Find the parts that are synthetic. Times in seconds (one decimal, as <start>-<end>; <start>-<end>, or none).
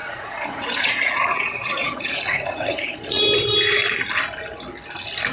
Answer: 0.0-3.2